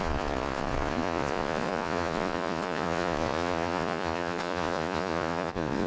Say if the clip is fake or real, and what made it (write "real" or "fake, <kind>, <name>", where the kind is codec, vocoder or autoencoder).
fake, vocoder, Vocos